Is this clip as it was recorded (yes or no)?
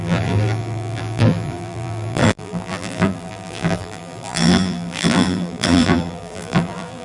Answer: no